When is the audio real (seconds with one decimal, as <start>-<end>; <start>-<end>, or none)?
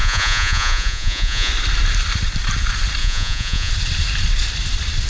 1.5-3.0; 3.7-5.1